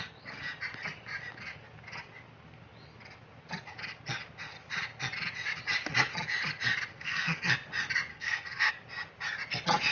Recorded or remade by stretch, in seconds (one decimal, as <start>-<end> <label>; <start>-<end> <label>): 0.0-6.9 recorded; 6.9-7.5 remade; 7.5-8.1 recorded; 8.1-8.7 remade; 8.7-9.9 recorded

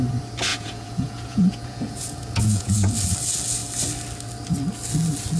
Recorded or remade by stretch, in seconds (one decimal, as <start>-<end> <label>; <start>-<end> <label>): 0.0-0.5 recorded; 0.5-2.9 remade; 2.9-5.4 recorded

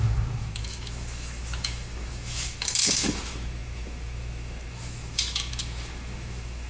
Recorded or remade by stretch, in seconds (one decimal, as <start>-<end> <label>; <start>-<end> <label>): 0.0-6.7 remade

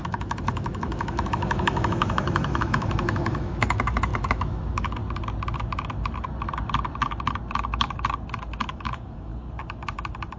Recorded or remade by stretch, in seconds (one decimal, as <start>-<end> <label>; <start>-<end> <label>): 0.0-5.0 remade; 5.0-8.7 recorded; 8.7-9.3 remade; 9.3-10.4 recorded

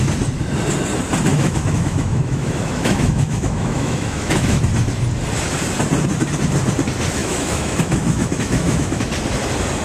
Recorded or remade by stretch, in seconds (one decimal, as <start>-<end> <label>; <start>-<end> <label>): 0.0-1.3 recorded; 1.3-4.6 remade; 4.6-7.2 recorded; 7.2-9.1 remade; 9.1-9.8 recorded

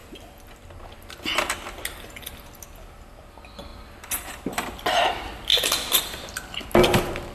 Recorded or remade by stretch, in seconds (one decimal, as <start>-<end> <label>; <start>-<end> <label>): 0.0-7.3 recorded

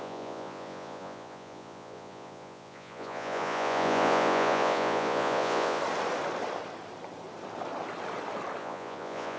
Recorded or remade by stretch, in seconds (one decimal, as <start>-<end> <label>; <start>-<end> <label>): 0.0-5.8 remade; 5.8-8.6 recorded; 8.6-9.4 remade

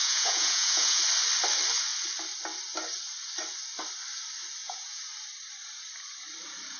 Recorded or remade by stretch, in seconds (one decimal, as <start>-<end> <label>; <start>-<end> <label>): 0.0-1.0 remade; 1.0-4.6 recorded; 4.6-5.1 remade; 5.1-6.8 recorded